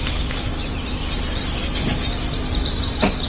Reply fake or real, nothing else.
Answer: fake